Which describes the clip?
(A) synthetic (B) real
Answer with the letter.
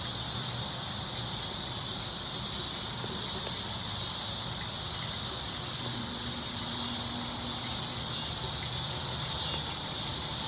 B